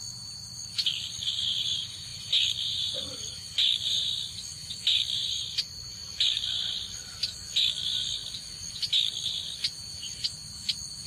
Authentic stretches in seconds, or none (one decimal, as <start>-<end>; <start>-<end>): 0.0-11.1